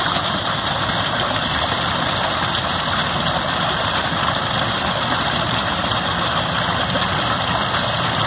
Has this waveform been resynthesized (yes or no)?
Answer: no